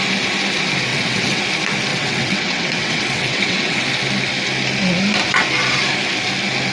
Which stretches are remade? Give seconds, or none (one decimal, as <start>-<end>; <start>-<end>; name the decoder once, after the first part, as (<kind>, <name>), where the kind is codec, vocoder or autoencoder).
0.9-1.4 (vocoder, WaveNeXt); 1.9-3.8